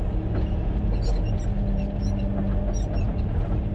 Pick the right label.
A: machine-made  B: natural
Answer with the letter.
B